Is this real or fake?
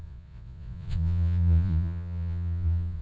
fake